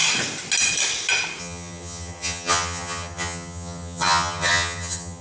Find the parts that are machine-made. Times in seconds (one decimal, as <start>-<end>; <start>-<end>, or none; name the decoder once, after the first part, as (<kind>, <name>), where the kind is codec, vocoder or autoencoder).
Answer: 1.4-5.2 (vocoder, HiFi-GAN)